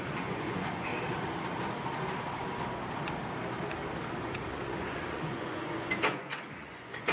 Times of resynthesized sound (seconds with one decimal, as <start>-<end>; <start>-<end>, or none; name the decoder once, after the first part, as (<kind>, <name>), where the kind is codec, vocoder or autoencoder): 0.0-0.9 (vocoder, Vocos); 4.2-7.1